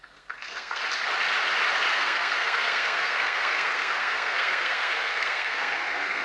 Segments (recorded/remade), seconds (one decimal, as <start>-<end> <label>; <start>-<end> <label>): 0.0-0.8 remade; 0.8-1.9 recorded; 1.9-6.2 remade